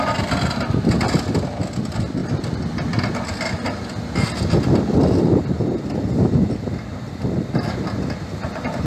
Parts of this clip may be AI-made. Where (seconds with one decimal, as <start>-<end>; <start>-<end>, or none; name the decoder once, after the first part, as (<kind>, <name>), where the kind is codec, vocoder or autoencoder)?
none